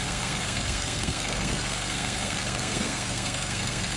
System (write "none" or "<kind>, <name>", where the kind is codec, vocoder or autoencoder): codec, SNAC